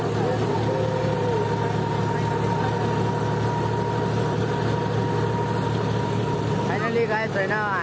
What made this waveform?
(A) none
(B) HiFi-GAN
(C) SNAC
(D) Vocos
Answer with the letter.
A